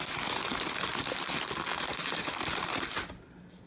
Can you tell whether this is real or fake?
real